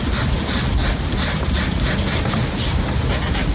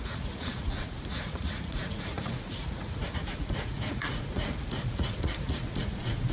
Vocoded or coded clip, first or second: second